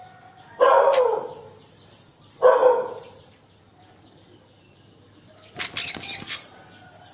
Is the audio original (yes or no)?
yes